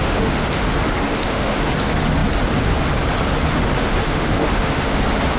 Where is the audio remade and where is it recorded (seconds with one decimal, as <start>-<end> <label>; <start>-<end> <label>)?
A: 0.0-0.6 remade; 0.6-1.1 recorded; 1.1-1.7 remade; 1.7-3.9 recorded; 3.9-5.0 remade; 5.0-5.4 recorded